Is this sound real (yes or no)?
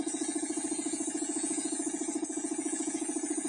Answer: no